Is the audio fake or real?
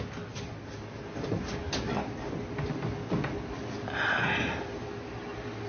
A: real